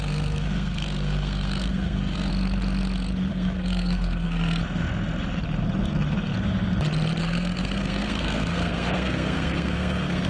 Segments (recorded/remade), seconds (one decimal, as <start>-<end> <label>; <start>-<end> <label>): 0.0-2.3 remade; 2.3-3.3 recorded; 3.3-4.6 remade; 4.6-7.2 recorded; 7.2-10.3 remade